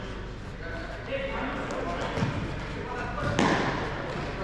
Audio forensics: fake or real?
real